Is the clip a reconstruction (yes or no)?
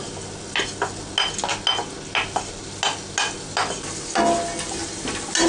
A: no